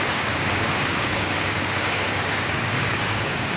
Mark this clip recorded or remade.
remade